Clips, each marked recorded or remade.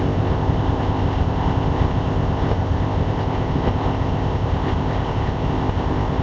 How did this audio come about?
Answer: remade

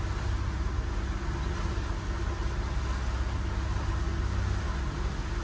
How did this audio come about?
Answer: recorded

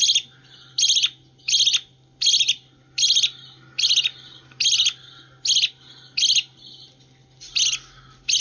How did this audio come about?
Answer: recorded